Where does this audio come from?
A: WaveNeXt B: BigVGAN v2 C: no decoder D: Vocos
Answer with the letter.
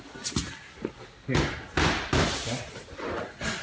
C